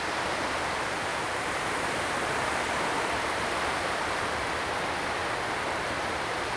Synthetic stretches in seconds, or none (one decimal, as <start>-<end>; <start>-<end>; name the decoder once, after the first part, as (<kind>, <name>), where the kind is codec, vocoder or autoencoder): 1.1-4.3 (vocoder, BigVGAN v2)